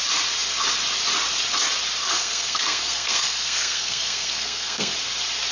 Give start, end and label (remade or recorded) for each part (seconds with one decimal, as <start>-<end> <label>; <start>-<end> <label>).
0.0-2.0 recorded; 2.0-4.9 remade; 4.9-5.5 recorded